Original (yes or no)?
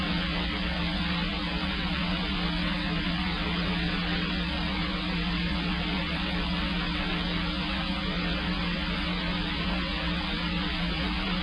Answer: no